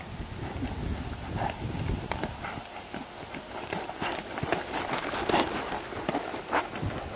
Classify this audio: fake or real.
real